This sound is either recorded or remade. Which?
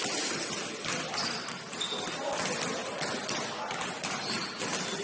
recorded